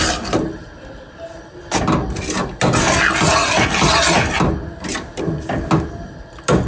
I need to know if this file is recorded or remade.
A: recorded